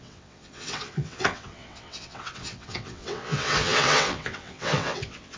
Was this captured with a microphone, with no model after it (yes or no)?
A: no